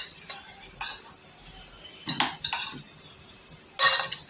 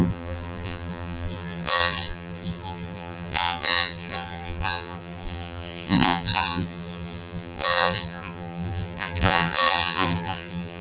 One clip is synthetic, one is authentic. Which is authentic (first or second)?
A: first